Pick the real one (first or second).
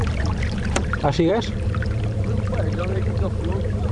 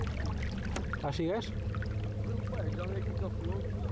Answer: second